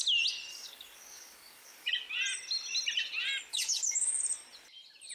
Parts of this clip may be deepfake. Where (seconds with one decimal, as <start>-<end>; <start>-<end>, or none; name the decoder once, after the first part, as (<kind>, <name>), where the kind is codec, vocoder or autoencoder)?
0.5-1.9 (codec, DAC); 3.5-4.2